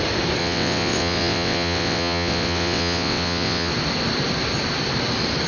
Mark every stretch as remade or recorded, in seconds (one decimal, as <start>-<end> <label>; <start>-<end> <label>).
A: 0.0-0.4 recorded; 0.4-3.7 remade; 3.7-5.5 recorded